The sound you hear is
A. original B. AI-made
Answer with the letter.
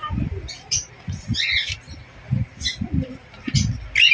A